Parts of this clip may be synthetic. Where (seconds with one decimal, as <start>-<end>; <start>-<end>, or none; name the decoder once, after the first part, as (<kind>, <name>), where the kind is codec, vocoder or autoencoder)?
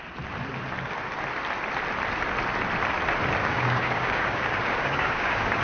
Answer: 3.4-5.6 (codec, DAC)